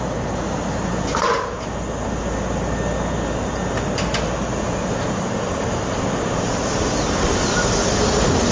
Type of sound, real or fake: real